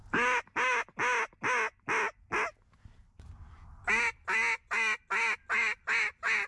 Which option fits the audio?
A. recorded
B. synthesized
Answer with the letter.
A